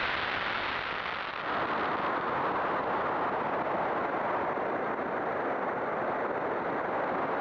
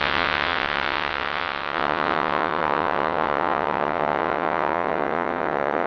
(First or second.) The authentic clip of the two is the first